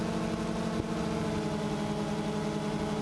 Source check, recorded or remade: recorded